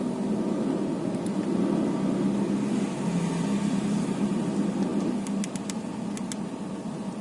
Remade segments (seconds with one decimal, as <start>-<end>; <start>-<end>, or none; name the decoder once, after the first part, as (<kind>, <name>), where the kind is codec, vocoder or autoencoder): none